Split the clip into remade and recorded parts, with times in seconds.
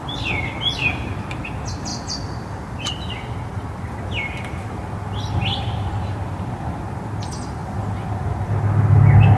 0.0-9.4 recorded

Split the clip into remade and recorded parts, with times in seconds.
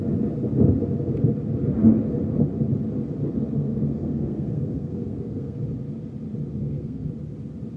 0.0-3.6 recorded; 3.6-5.6 remade; 5.6-6.6 recorded; 6.6-7.1 remade; 7.1-7.8 recorded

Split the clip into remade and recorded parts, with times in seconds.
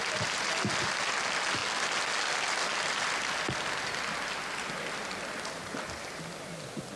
0.0-7.0 recorded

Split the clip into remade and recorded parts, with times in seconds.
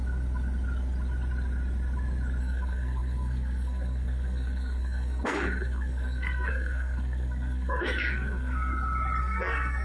0.0-2.4 recorded; 2.4-8.7 remade; 8.7-9.2 recorded; 9.2-9.8 remade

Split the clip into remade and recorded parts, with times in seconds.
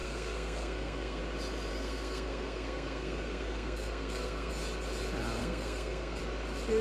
0.0-1.2 remade; 1.2-1.7 recorded; 1.7-4.5 remade; 4.5-5.4 recorded; 5.4-6.2 remade; 6.2-6.8 recorded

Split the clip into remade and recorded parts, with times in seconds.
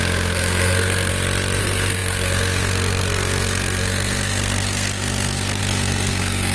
0.0-1.1 remade; 1.1-1.6 recorded; 1.6-6.5 remade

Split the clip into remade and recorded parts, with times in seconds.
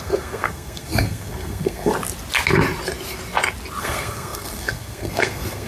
0.0-1.9 remade; 1.9-3.8 recorded; 3.8-5.7 remade